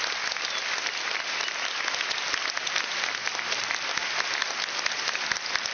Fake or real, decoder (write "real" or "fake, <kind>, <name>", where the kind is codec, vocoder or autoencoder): real